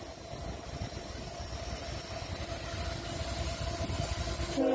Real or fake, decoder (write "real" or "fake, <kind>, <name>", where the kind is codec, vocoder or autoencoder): real